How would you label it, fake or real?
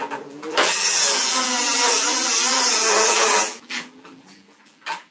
fake